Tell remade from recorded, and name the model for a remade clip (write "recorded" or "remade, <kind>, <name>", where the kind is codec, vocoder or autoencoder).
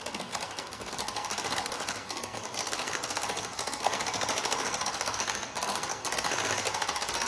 remade, codec, SNAC